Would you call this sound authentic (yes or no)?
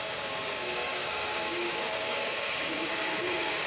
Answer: no